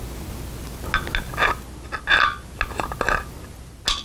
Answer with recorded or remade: recorded